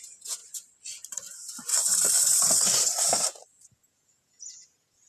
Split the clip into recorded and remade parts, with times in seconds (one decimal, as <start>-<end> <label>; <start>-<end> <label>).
0.0-0.4 remade; 0.4-3.5 recorded; 3.5-5.1 remade